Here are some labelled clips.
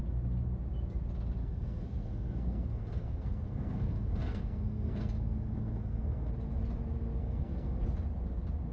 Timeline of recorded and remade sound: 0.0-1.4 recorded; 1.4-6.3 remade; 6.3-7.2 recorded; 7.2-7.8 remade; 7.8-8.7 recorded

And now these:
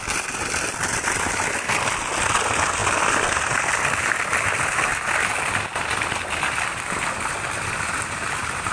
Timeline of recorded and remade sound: 0.0-8.7 recorded

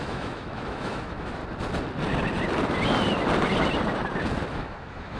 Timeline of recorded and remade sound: 0.0-1.4 remade; 1.4-4.5 recorded; 4.5-5.2 remade

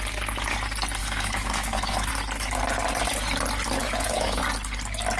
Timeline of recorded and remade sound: 0.0-1.0 recorded; 1.0-2.1 remade; 2.1-3.8 recorded; 3.8-4.4 remade; 4.4-5.2 recorded

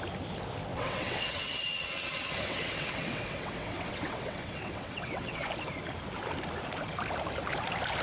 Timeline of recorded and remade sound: 0.0-0.7 recorded; 0.7-5.5 remade; 5.5-8.0 recorded

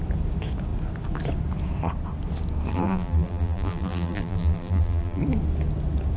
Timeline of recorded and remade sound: 0.0-2.7 recorded; 2.7-5.2 remade; 5.2-6.2 recorded

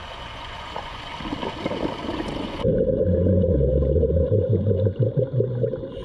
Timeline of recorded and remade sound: 0.0-1.1 remade; 1.1-2.1 recorded; 2.1-2.7 remade; 2.7-6.0 recorded

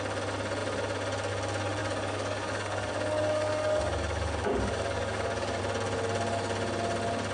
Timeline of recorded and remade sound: 0.0-1.8 recorded; 1.8-5.6 remade; 5.6-7.3 recorded